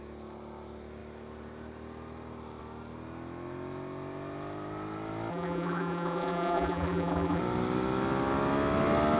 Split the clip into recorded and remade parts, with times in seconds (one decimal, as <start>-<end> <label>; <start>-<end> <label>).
0.0-5.3 recorded; 5.3-7.4 remade; 7.4-9.2 recorded